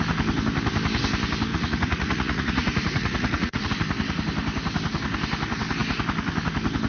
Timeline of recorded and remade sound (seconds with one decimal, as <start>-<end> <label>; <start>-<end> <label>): 0.0-1.5 recorded; 1.5-3.7 remade; 3.7-6.9 recorded